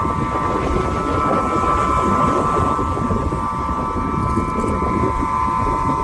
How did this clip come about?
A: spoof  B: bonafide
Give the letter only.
B